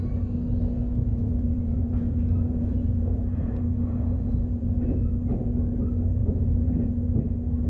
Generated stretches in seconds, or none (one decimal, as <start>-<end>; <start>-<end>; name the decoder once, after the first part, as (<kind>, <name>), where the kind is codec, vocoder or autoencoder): 1.1-5.1 (vocoder, Vocos); 6.2-6.9